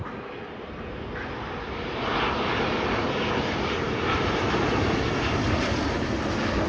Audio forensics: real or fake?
real